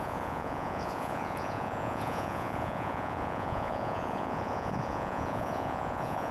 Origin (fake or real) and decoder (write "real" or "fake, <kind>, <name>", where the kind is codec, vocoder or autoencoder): fake, vocoder, Vocos